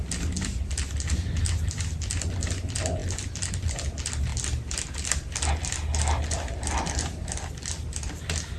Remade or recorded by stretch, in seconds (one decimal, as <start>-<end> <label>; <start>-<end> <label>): 0.0-8.6 recorded